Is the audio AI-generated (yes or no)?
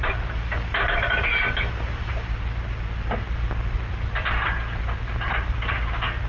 no